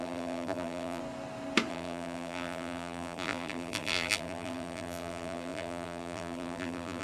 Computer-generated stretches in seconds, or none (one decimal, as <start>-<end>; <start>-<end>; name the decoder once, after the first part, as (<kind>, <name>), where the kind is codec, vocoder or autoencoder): 0.0-1.0 (vocoder, BigVGAN v2); 1.7-7.0